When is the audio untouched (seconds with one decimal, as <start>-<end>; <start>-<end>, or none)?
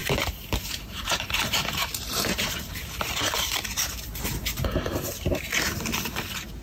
4.0-6.6